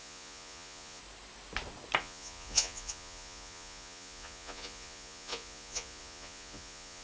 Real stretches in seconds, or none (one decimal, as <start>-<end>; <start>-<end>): 1.0-2.0